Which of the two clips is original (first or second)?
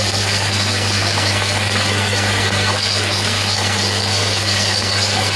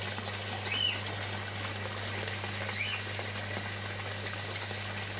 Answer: second